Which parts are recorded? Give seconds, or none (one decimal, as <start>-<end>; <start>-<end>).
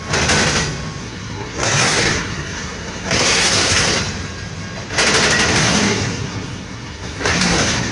0.0-1.0; 4.0-5.6